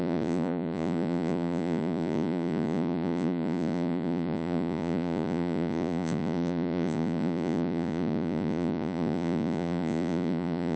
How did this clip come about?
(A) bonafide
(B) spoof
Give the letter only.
B